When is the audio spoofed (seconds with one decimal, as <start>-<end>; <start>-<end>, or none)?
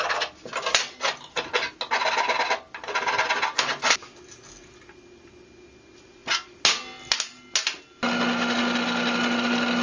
none